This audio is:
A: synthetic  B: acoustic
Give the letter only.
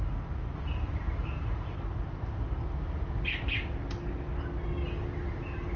B